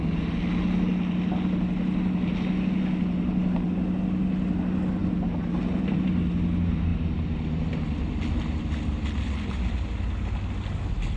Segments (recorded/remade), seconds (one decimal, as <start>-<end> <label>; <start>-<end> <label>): 0.0-11.2 recorded